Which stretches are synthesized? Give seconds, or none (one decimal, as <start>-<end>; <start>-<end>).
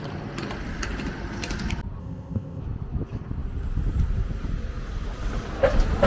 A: 2.0-2.6